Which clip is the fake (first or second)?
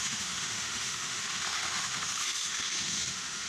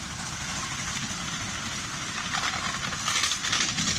first